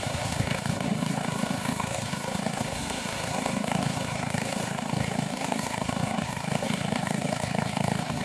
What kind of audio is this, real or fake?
fake